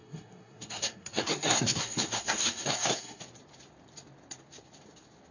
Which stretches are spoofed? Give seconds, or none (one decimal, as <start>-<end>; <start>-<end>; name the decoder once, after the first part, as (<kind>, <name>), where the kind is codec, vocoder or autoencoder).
0.0-3.2 (codec, SNAC)